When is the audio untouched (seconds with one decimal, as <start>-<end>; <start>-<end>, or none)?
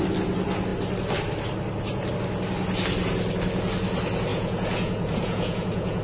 0.0-4.3